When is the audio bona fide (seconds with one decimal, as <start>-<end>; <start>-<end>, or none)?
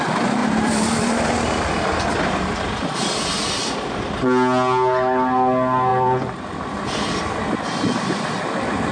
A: 0.0-0.4; 3.5-5.9; 7.2-8.9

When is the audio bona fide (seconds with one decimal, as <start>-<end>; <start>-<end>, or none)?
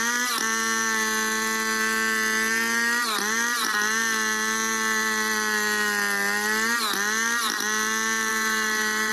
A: 0.0-8.3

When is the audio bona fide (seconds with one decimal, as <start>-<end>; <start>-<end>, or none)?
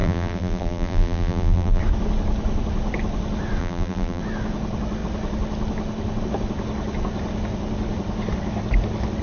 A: 1.8-3.6; 4.2-9.2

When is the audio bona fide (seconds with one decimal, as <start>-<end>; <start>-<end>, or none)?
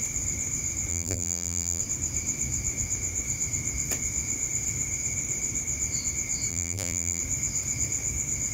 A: 0.0-0.9; 1.8-6.5; 7.2-8.5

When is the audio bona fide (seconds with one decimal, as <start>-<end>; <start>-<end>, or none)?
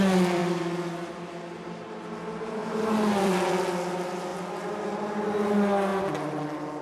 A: 0.0-0.4; 1.1-2.6; 3.5-4.3; 5.0-6.8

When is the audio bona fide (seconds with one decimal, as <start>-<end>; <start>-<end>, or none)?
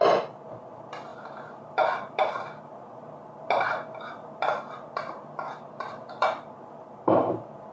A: none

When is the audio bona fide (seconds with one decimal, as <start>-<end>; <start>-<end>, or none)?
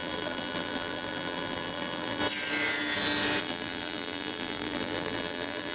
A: 2.2-3.4